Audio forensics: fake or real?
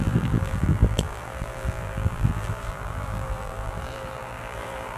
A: fake